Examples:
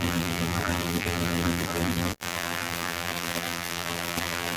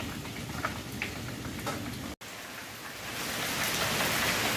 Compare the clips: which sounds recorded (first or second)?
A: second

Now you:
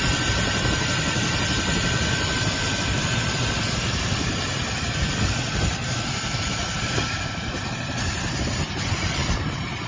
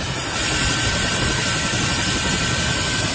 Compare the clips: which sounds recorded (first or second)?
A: second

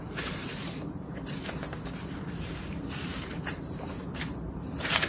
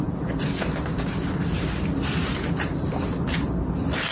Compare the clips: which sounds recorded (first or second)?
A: second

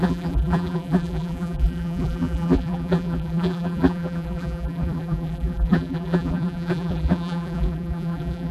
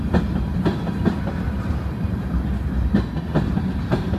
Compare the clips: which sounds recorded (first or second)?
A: second